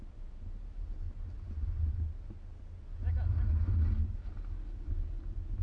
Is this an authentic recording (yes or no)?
yes